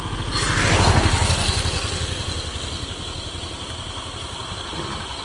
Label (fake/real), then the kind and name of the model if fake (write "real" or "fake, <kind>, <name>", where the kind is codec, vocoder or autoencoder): real